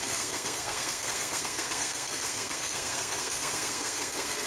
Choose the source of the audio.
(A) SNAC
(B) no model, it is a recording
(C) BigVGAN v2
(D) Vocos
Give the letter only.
A